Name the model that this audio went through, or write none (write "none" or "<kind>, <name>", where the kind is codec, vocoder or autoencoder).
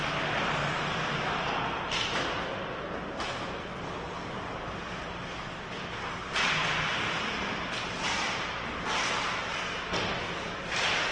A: none